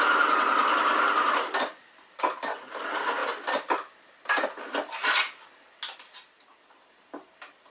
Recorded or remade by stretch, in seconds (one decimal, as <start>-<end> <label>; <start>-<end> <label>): 0.0-7.7 recorded